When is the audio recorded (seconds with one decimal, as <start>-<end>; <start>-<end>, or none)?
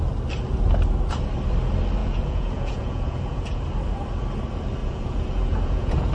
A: 0.0-2.0; 3.6-4.8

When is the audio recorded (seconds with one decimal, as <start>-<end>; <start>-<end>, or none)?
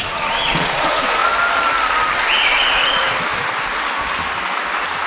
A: 1.2-2.2; 3.0-5.1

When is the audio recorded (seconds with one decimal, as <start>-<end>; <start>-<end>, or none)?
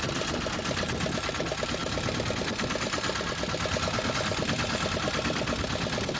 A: 0.0-6.2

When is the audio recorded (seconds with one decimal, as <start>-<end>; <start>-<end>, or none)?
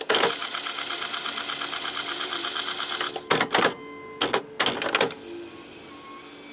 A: 0.0-6.5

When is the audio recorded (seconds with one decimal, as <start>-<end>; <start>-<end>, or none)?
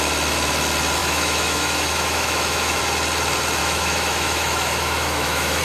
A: 0.0-1.0; 2.8-3.6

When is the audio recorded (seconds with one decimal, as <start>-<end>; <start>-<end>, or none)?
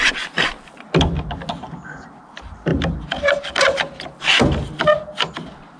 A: 0.0-5.8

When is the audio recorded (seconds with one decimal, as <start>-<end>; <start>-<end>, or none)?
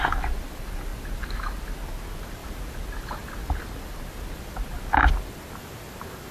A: 0.0-6.3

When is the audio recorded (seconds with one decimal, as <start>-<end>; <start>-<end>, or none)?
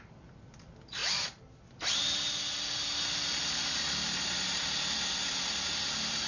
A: 0.0-6.3